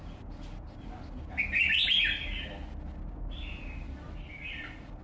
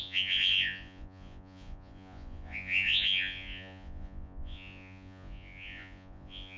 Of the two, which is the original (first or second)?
first